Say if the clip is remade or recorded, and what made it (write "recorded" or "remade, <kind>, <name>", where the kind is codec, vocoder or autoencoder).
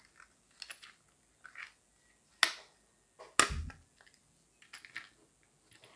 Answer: recorded